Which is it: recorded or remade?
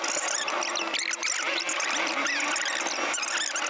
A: recorded